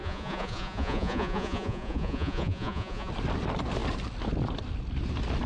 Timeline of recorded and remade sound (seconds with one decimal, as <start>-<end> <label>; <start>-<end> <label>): 0.0-3.1 remade; 3.1-5.5 recorded